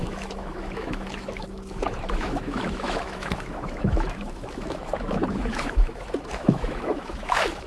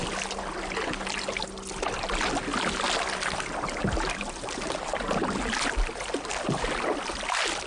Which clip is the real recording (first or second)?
second